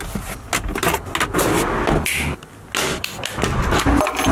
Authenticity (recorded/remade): recorded